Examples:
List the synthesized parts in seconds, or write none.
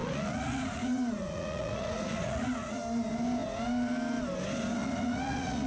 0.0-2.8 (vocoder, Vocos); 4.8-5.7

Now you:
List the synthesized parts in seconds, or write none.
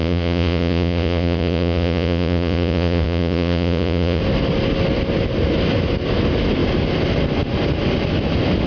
0.0-4.2 (vocoder, Vocos)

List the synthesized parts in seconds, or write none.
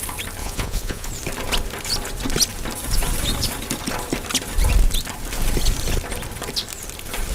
0.4-1.1 (vocoder, Vocos)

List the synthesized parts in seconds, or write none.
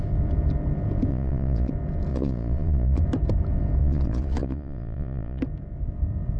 1.1-1.7 (vocoder, Vocos); 2.1-3.0; 3.8-5.4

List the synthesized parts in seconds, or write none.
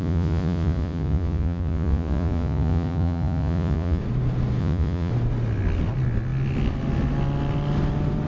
0.0-4.0 (vocoder, Vocos); 4.6-5.1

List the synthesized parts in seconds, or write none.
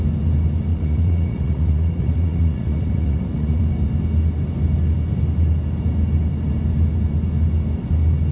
0.7-3.6 (vocoder, Vocos)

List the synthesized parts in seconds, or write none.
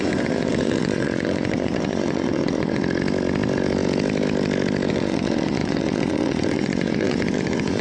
0.0-2.8 (vocoder, Vocos); 4.9-7.8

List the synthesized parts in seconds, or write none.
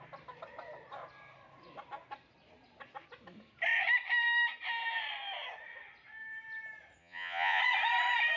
7.0-7.6 (vocoder, Vocos)